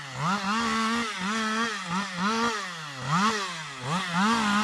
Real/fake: real